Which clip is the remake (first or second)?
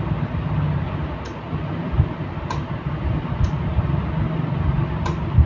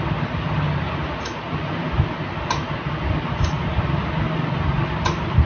first